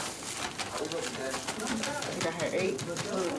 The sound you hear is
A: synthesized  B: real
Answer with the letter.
B